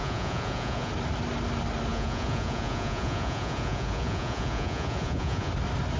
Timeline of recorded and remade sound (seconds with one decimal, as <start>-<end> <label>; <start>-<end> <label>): 0.0-0.9 remade; 0.9-1.9 recorded; 1.9-5.5 remade; 5.5-6.0 recorded